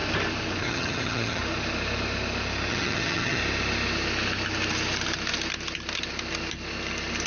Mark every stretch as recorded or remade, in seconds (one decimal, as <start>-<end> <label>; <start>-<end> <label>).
0.0-0.6 recorded; 0.6-1.4 remade; 1.4-2.7 recorded; 2.7-3.4 remade; 3.4-7.3 recorded